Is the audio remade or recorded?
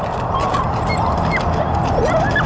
recorded